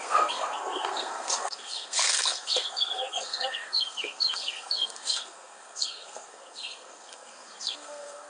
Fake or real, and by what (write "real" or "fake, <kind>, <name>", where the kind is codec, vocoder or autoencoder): fake, codec, SNAC